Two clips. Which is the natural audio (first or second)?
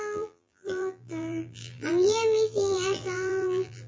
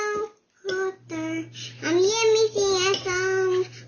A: second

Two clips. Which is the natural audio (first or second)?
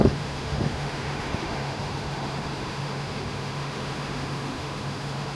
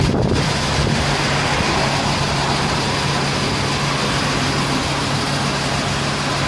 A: second